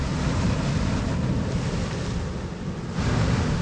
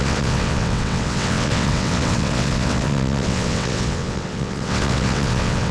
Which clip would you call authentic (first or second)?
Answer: first